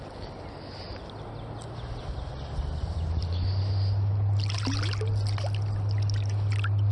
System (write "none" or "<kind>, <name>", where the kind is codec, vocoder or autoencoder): none